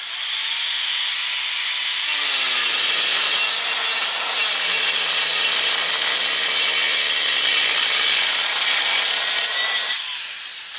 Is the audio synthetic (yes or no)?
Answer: no